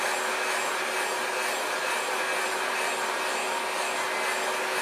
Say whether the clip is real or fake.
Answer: real